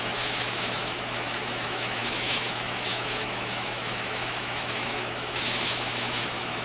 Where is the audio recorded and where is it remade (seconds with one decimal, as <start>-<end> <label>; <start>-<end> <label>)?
0.0-6.6 remade